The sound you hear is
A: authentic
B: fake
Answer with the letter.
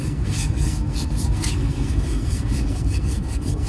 B